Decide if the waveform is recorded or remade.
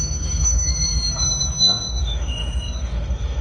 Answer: remade